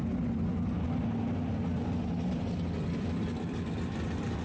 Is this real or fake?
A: real